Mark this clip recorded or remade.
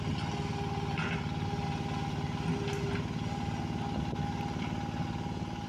recorded